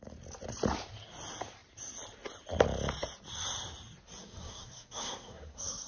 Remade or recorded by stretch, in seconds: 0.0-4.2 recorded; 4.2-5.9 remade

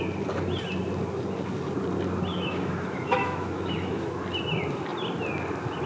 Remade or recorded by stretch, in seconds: 0.0-2.3 recorded; 2.3-4.2 remade; 4.2-5.9 recorded

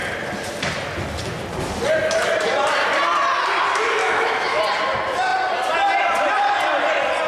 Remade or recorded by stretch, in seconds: 0.0-4.0 recorded; 4.0-4.6 remade; 4.6-7.3 recorded

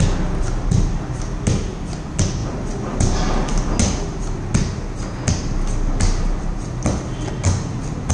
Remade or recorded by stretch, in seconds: 0.0-8.1 recorded

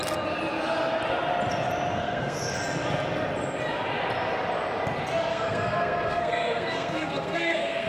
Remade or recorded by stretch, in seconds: 0.0-1.9 recorded; 1.9-2.4 remade; 2.4-5.3 recorded; 5.3-7.9 remade

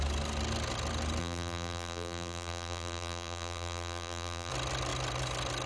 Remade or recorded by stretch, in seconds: 0.0-1.2 recorded; 1.2-4.5 remade; 4.5-5.7 recorded

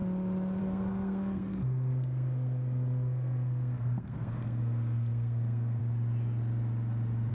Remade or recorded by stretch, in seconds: 0.0-0.6 recorded; 0.6-5.8 remade; 5.8-7.3 recorded

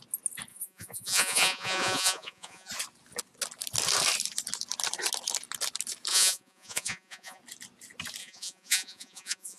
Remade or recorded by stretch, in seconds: 0.0-0.5 recorded; 0.5-2.7 remade; 2.7-6.1 recorded; 6.1-7.4 remade; 7.4-8.2 recorded; 8.2-9.6 remade